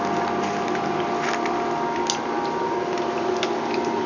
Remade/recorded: recorded